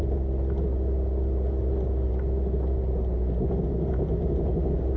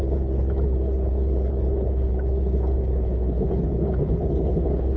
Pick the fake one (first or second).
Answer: second